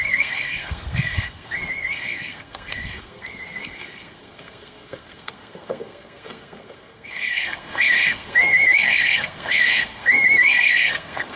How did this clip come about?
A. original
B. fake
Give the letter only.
B